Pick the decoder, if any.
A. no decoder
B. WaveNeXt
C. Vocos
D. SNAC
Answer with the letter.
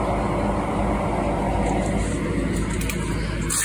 A